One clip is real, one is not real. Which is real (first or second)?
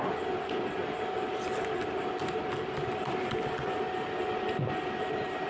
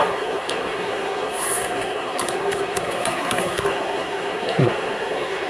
first